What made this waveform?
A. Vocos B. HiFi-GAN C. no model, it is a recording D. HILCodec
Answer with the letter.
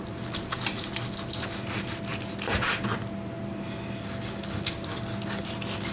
C